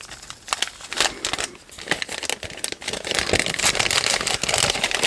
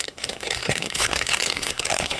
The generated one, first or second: second